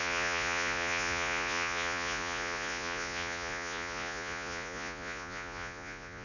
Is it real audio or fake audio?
fake